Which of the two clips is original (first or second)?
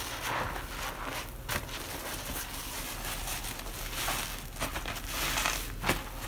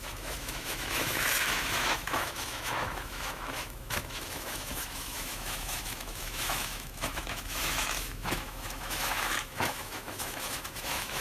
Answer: first